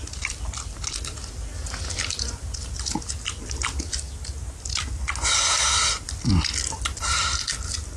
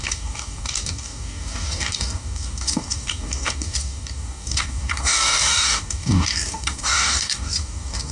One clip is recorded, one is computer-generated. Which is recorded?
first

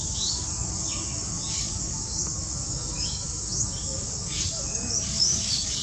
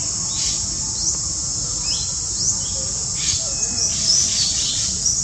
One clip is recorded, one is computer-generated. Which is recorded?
second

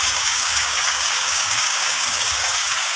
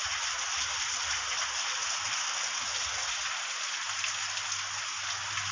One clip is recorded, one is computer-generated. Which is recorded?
second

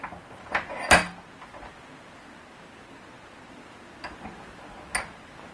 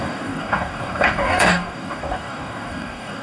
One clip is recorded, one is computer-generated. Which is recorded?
first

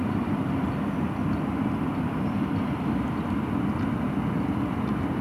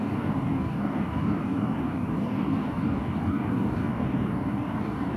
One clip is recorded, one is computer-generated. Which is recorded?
first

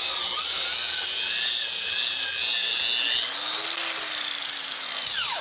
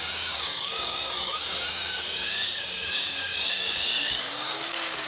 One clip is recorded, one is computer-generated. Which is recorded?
first